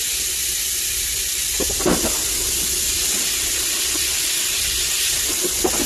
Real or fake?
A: fake